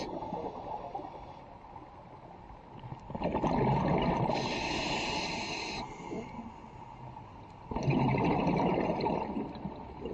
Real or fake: real